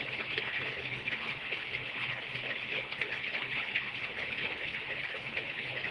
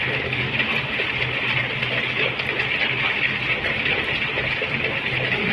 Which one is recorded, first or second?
second